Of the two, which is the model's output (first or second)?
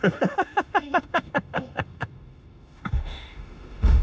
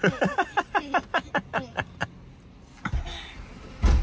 first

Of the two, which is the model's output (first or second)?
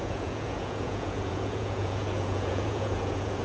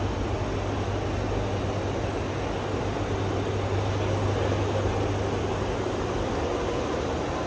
first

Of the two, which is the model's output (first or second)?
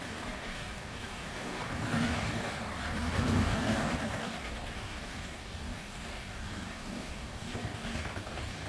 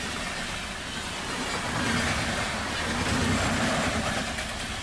first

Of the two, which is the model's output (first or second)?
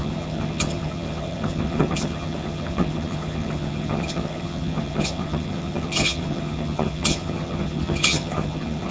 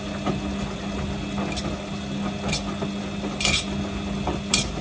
first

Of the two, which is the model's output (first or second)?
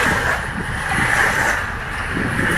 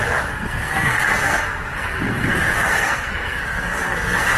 second